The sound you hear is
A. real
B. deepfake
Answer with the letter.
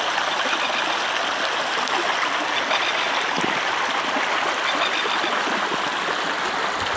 A